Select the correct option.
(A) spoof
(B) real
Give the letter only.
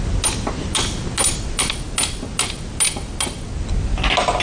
B